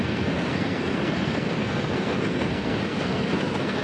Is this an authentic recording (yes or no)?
no